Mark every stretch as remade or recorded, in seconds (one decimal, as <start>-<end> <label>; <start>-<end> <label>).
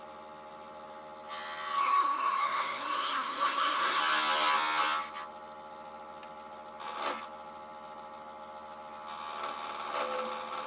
0.0-1.8 recorded; 1.8-4.0 remade; 4.0-10.7 recorded